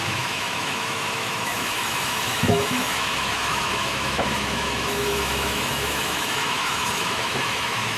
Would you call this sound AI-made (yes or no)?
yes